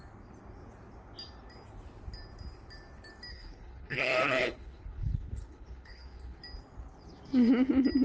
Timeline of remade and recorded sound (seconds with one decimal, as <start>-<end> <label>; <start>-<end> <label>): 0.0-3.3 recorded; 3.3-6.4 remade; 6.4-8.0 recorded